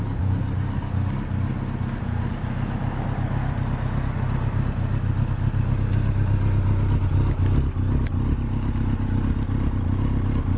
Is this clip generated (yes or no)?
no